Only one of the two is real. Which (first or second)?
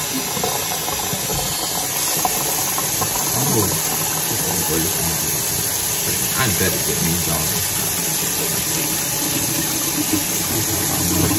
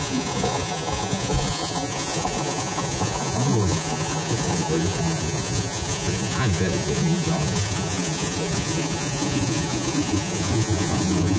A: first